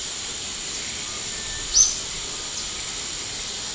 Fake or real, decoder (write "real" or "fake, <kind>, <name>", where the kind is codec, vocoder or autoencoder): real